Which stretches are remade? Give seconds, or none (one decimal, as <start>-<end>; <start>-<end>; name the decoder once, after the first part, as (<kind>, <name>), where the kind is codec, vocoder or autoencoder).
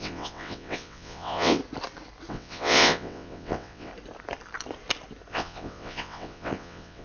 0.0-1.6 (vocoder, WaveNeXt); 2.3-3.9; 5.3-7.0